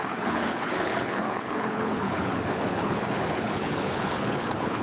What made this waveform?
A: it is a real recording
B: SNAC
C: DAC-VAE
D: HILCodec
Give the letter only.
D